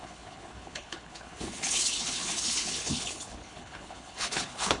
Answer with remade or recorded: remade